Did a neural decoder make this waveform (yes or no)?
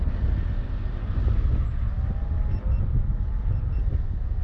no